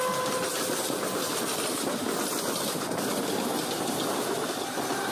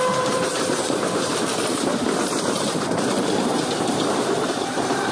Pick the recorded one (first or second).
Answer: first